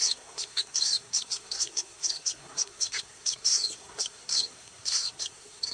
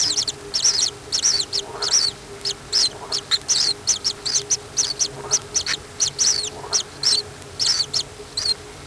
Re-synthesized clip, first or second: first